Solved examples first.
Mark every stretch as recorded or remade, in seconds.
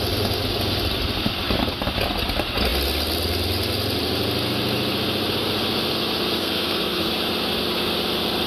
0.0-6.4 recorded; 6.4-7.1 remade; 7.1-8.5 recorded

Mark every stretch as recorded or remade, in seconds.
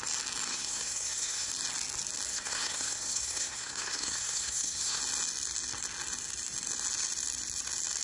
0.0-0.5 recorded; 0.5-1.5 remade; 1.5-2.3 recorded; 2.3-5.0 remade; 5.0-8.0 recorded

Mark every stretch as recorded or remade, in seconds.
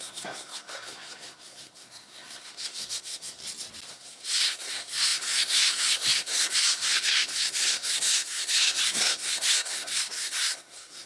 0.0-3.4 remade; 3.4-3.9 recorded; 3.9-11.1 remade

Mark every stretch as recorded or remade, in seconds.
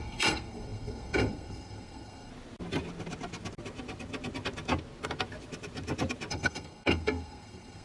0.0-2.3 remade; 2.3-6.3 recorded; 6.3-7.8 remade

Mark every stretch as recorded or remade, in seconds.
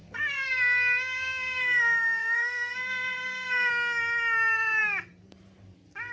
0.0-3.7 remade; 3.7-6.1 recorded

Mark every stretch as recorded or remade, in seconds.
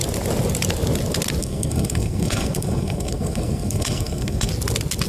0.0-1.4 recorded; 1.4-4.5 remade; 4.5-5.1 recorded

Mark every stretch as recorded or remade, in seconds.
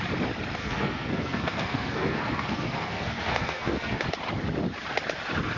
0.0-0.6 recorded; 0.6-4.0 remade; 4.0-5.6 recorded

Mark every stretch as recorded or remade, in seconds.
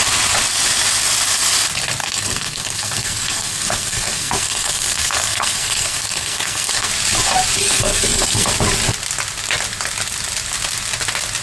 0.0-2.0 recorded; 2.0-6.9 remade; 6.9-7.6 recorded; 7.6-8.5 remade; 8.5-11.4 recorded